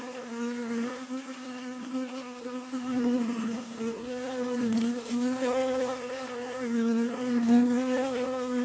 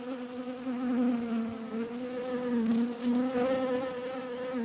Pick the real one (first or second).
second